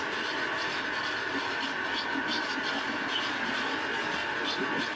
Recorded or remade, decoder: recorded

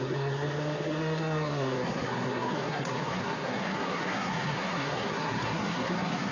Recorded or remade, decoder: remade, codec, SNAC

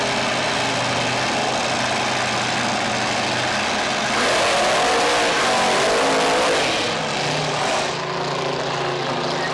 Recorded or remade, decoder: recorded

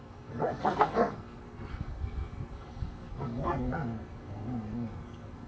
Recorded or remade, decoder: remade, codec, SNAC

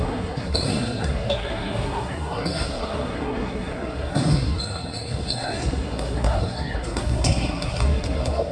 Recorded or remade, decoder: remade, codec, SNAC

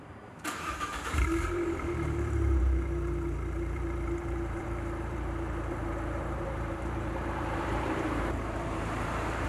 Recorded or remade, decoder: remade, vocoder, BigVGAN v2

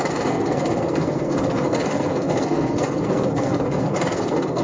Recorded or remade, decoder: remade, codec, SNAC